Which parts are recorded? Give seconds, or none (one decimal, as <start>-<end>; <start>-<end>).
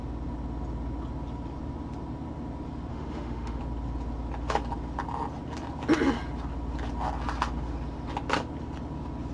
0.0-2.9; 3.6-9.3